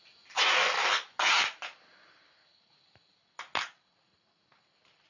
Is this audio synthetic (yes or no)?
no